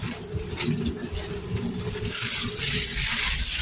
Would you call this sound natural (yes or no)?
yes